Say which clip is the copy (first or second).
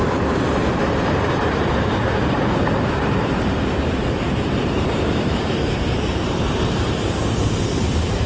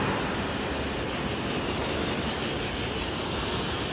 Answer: first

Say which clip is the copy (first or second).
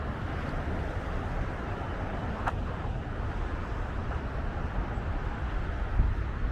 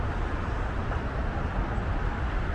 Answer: first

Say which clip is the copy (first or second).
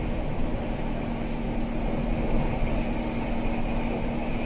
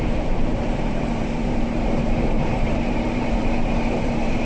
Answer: second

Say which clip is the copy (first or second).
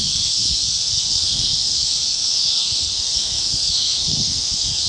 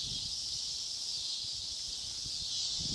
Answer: first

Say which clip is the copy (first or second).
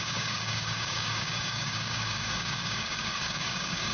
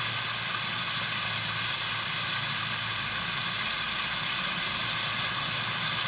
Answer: first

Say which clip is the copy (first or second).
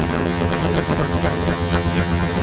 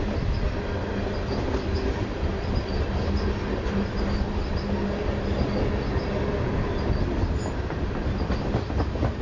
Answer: first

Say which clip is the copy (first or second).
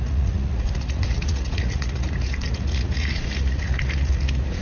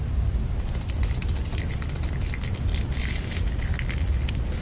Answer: first